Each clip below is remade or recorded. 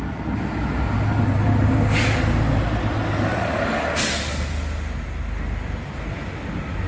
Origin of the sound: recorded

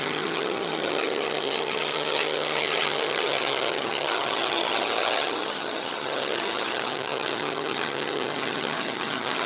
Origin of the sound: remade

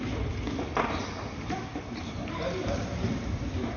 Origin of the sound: recorded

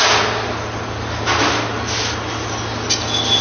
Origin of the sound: recorded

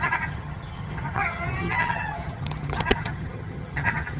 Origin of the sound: remade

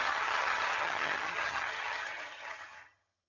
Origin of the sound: remade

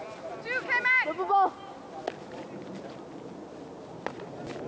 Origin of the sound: recorded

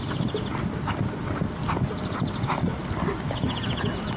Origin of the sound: recorded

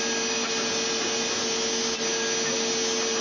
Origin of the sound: recorded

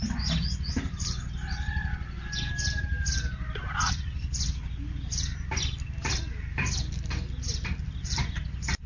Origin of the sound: recorded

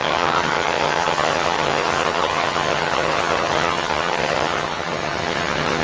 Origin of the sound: remade